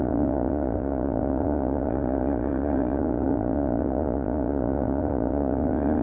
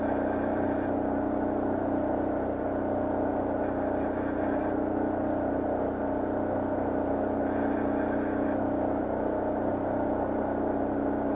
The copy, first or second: first